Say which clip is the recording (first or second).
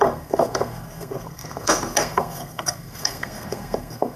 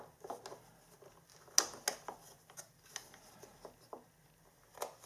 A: second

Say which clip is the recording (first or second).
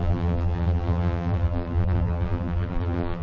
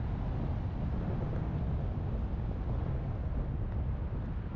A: second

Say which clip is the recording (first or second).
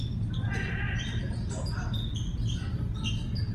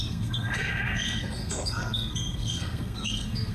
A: first